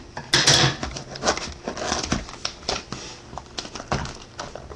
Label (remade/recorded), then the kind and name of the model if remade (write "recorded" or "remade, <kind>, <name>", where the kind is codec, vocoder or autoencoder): recorded